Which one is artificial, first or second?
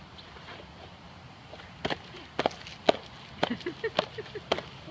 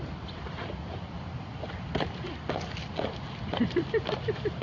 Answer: second